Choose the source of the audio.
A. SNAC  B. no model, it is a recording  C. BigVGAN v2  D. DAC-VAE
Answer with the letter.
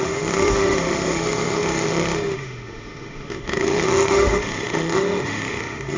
D